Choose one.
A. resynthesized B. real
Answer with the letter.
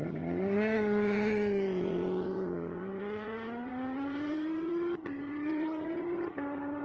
A